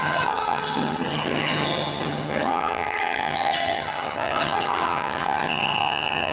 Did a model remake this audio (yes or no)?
yes